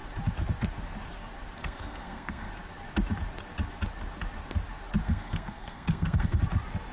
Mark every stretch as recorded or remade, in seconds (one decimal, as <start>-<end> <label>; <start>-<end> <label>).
0.0-1.6 recorded; 1.6-2.5 remade; 2.5-5.0 recorded; 5.0-6.4 remade; 6.4-6.9 recorded